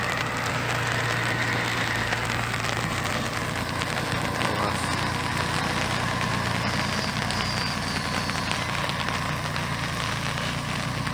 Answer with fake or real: real